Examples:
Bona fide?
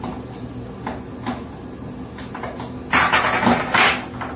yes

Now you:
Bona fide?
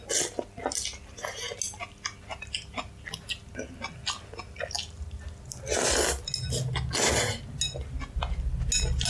yes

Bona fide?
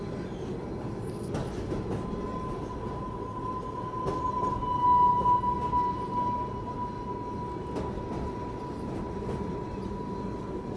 yes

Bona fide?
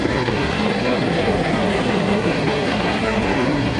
no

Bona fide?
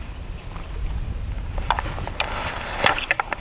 yes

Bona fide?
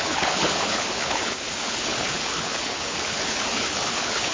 no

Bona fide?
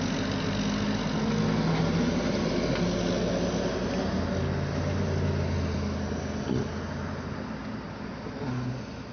yes